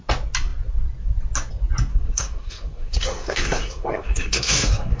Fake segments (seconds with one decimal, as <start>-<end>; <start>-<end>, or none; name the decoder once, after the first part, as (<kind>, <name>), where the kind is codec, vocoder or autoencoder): 1.9-5.0 (codec, SNAC)

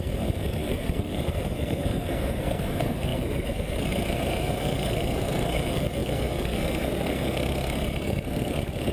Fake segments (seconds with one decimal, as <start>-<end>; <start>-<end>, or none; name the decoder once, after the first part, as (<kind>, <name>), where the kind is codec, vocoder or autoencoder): 0.0-8.9 (codec, SNAC)

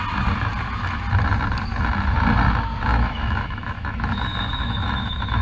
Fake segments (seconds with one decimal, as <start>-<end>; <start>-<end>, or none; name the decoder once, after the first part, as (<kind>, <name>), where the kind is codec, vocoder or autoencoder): 2.9-5.4 (autoencoder, DAC-VAE)

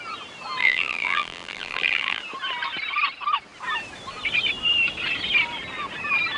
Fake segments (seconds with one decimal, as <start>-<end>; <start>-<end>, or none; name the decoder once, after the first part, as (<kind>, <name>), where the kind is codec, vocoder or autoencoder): 0.6-2.2 (vocoder, BigVGAN v2)